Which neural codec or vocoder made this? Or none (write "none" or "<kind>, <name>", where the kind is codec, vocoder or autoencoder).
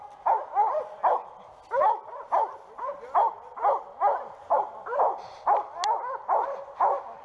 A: none